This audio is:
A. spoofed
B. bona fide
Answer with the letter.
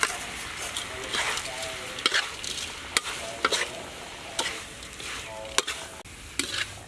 B